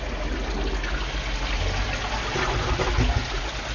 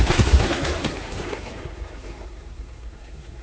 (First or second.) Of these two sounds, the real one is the first